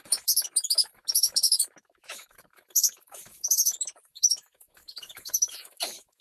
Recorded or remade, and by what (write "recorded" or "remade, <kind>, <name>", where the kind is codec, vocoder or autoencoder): remade, autoencoder, DAC-VAE